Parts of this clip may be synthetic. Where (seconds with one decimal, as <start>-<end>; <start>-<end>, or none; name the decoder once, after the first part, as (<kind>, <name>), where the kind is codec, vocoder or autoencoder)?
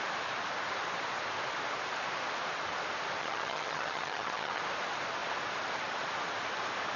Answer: 3.2-4.6 (vocoder, HiFi-GAN)